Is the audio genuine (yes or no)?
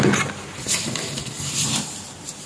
yes